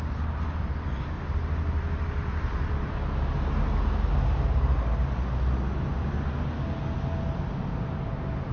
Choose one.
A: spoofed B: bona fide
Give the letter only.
B